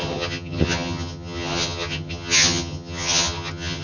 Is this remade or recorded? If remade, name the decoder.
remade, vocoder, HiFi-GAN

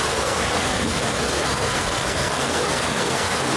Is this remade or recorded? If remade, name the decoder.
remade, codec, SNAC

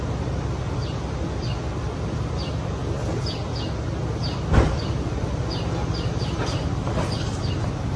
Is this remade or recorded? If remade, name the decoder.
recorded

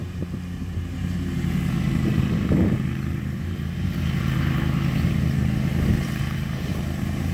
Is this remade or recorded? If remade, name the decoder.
remade, vocoder, BigVGAN v2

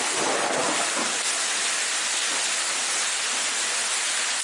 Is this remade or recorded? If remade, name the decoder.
recorded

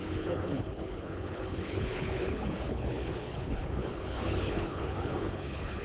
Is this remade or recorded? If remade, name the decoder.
remade, codec, HILCodec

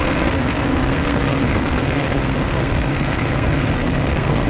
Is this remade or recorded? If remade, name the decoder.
remade, codec, SNAC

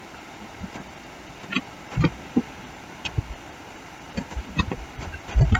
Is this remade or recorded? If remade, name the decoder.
remade, vocoder, BigVGAN v2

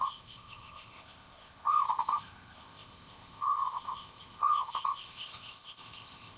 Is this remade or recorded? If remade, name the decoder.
remade, codec, ZipCodec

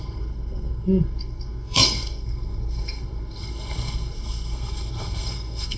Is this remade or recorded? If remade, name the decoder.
remade, codec, SNAC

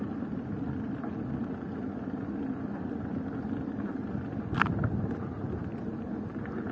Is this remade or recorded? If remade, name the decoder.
recorded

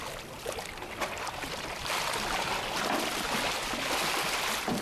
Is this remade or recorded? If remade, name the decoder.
recorded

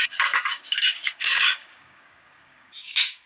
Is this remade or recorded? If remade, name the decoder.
remade, codec, DAC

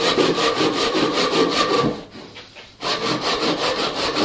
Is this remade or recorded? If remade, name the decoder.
recorded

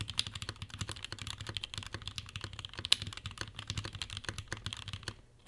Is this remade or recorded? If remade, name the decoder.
recorded